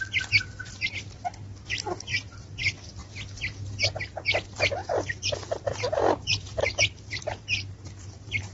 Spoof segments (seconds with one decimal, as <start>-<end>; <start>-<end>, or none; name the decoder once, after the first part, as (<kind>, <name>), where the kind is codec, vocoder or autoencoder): 2.1-2.6 (vocoder, BigVGAN v2); 4.8-8.5